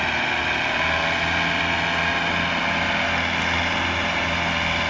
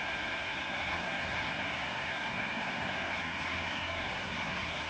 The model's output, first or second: second